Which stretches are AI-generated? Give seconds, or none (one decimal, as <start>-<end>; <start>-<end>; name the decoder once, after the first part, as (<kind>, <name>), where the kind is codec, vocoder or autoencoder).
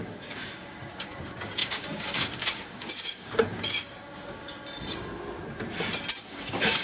0.0-4.6 (codec, DAC); 6.2-6.8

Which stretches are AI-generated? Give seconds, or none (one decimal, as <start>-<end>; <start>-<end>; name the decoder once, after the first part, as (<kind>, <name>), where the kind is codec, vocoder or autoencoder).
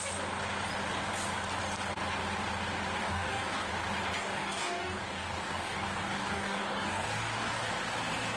3.0-3.7 (codec, DAC); 4.2-7.7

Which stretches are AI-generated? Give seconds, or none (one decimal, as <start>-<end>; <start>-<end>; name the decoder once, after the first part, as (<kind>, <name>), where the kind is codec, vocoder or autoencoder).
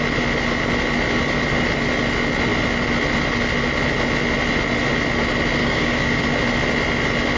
5.6-6.2 (codec, DAC)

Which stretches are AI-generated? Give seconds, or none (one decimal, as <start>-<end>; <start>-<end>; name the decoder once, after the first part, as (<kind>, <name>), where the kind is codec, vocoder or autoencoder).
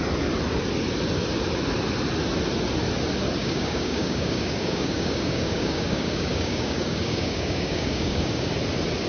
3.4-8.5 (codec, DAC)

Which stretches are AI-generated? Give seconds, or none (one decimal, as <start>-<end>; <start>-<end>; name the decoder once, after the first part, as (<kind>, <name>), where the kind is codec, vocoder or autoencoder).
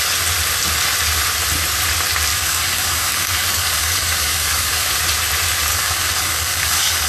2.3-4.9 (codec, DAC); 5.7-7.1